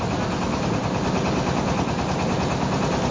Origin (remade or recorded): recorded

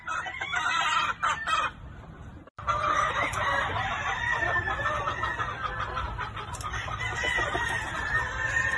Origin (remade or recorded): remade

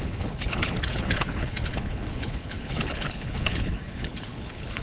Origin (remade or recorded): remade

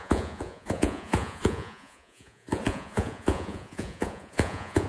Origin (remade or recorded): remade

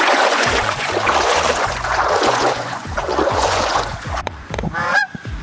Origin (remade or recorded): remade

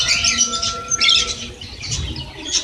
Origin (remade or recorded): recorded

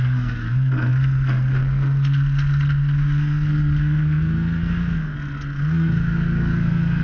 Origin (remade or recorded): remade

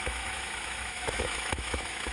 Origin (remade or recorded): remade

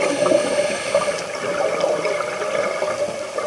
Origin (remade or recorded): recorded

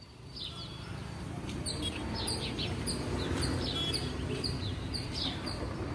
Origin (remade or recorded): remade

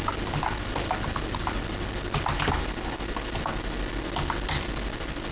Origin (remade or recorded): recorded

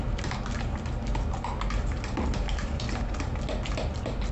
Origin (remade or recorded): recorded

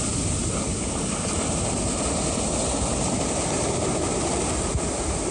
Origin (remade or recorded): recorded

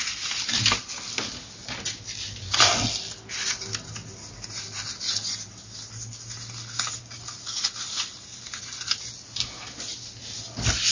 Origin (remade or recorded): recorded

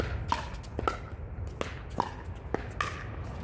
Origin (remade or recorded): recorded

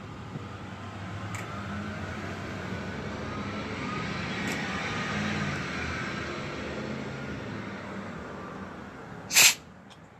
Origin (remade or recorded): recorded